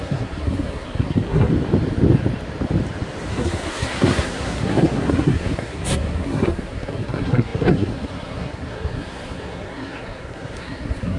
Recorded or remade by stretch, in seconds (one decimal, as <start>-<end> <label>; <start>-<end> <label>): 0.0-1.5 remade; 1.5-3.3 recorded; 3.3-11.2 remade